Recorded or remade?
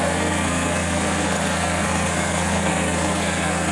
remade